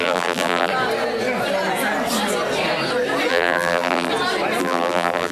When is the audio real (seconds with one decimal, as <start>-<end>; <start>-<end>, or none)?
0.7-3.3; 4.1-4.6